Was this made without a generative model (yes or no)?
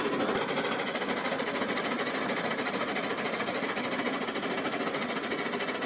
yes